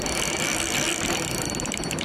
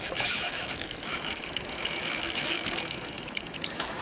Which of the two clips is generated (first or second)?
second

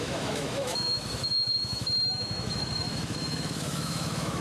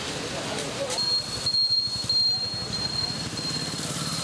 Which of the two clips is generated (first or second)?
first